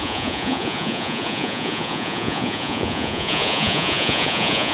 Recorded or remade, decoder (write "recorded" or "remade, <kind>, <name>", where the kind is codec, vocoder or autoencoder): remade, vocoder, Vocos